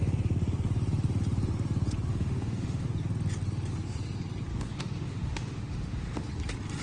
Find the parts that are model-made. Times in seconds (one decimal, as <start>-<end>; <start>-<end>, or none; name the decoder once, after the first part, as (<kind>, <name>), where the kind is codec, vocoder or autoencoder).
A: 2.1-2.9 (autoencoder, DAC-VAE); 4.5-6.3